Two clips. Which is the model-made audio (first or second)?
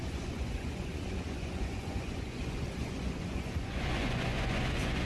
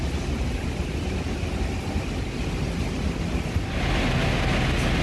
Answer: first